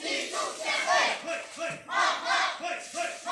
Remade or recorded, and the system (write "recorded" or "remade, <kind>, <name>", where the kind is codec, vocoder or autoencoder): recorded